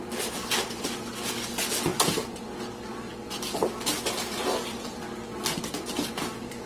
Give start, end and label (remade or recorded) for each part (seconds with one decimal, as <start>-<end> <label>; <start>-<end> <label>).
0.0-6.7 recorded